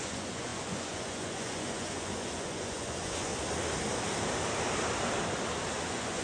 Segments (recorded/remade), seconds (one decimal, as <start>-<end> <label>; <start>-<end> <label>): 0.0-3.3 remade; 3.3-5.8 recorded; 5.8-6.2 remade